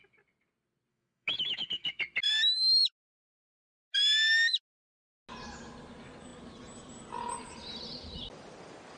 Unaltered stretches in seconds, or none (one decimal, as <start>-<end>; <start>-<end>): 0.0-0.9; 2.0-9.0